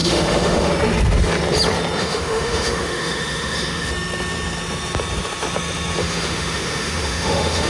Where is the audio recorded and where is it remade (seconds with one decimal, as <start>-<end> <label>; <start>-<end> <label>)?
0.0-0.7 remade; 0.7-2.0 recorded; 2.0-3.9 remade; 3.9-6.0 recorded; 6.0-7.7 remade